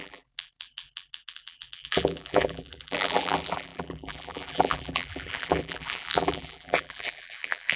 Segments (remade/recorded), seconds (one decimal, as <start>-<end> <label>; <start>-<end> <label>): 0.0-7.8 remade